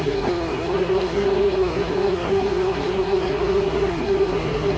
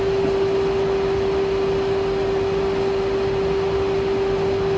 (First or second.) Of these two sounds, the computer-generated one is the first